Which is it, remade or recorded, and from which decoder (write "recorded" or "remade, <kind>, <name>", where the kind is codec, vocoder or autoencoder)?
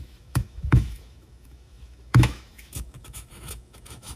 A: remade, autoencoder, DAC-VAE